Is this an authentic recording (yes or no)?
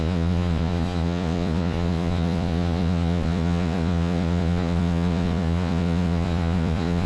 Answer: no